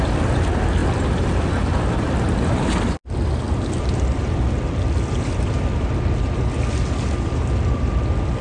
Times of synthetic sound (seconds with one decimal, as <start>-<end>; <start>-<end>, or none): none